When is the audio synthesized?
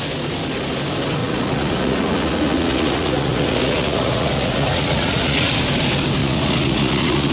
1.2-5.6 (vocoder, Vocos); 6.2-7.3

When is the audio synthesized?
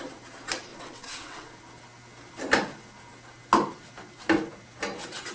0.7-1.5 (vocoder, WaveNeXt)